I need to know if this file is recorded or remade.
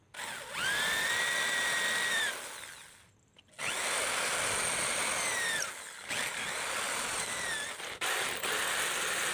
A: recorded